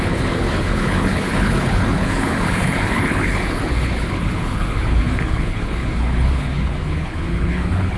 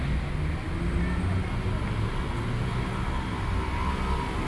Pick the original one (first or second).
second